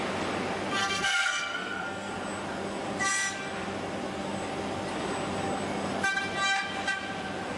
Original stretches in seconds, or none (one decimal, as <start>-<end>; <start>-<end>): 0.0-0.8; 2.1-7.6